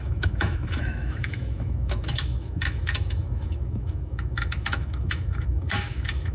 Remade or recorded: remade